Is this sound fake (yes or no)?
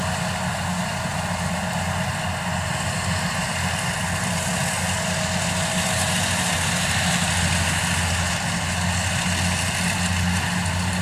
no